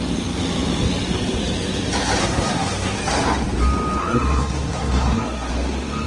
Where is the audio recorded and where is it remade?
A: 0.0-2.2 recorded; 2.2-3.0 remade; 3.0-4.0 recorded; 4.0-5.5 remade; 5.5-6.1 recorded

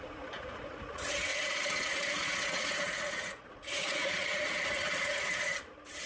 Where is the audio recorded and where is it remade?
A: 0.0-5.5 remade; 5.5-6.1 recorded

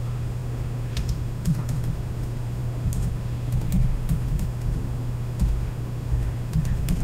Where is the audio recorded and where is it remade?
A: 0.0-7.0 remade

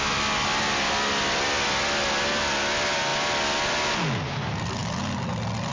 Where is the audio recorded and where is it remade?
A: 0.0-5.7 recorded